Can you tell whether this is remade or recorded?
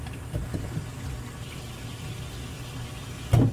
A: recorded